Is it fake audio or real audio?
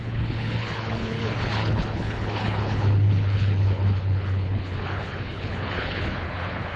fake